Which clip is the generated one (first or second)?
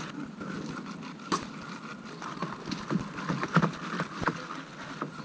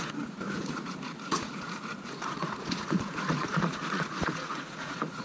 second